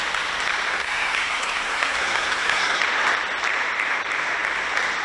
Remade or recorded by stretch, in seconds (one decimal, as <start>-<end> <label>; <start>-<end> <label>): 0.0-0.7 recorded; 0.7-2.8 remade; 2.8-5.0 recorded